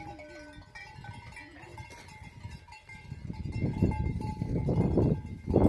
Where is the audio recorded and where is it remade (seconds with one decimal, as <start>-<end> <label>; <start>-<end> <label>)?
0.0-5.7 recorded

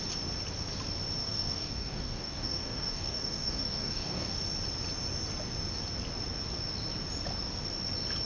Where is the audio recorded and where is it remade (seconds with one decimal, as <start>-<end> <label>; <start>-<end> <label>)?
0.0-1.2 recorded; 1.2-4.4 remade; 4.4-8.2 recorded

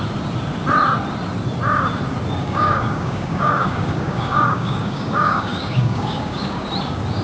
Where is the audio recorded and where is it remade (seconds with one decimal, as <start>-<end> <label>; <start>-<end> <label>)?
0.0-2.4 recorded; 2.4-6.7 remade; 6.7-7.2 recorded

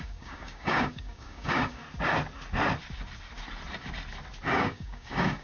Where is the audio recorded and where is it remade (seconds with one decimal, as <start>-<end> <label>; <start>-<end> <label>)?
0.0-1.8 remade; 1.8-4.5 recorded; 4.5-5.4 remade